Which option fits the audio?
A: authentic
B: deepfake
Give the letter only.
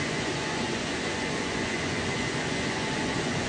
B